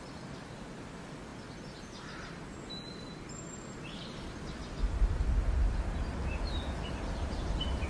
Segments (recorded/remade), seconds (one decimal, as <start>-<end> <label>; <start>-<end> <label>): 0.0-7.9 recorded